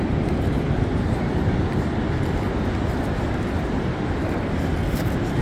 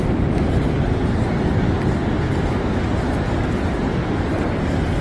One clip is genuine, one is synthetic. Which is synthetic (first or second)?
first